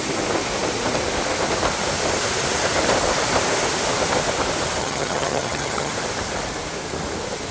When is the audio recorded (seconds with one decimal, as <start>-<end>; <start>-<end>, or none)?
0.0-4.8; 5.9-7.5